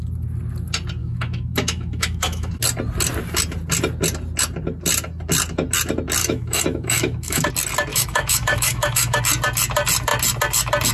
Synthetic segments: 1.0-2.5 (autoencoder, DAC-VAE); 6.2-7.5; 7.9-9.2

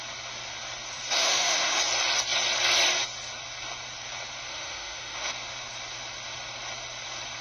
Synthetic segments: 1.2-1.8 (autoencoder, DAC-VAE); 4.5-5.3

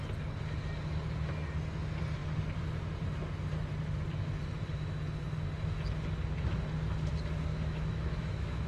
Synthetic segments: 7.5-8.7 (autoencoder, DAC-VAE)